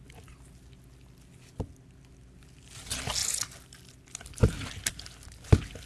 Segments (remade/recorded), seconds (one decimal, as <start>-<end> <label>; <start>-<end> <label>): 0.0-5.9 recorded